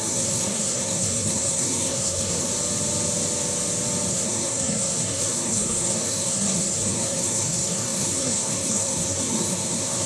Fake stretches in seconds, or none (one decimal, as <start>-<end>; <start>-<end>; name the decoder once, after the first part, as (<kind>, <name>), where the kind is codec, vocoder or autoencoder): 0.0-2.5 (codec, SNAC); 4.1-10.1